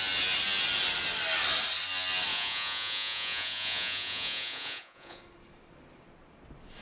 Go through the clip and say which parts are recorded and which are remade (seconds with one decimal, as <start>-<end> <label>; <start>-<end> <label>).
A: 0.0-2.3 recorded; 2.3-5.2 remade; 5.2-6.8 recorded